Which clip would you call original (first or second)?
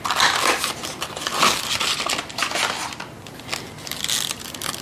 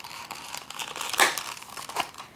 first